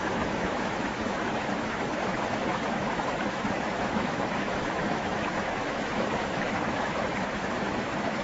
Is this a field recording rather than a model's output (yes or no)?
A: no